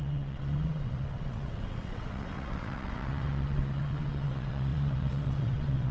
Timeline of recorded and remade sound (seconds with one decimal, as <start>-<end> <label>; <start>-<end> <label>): 0.0-5.9 remade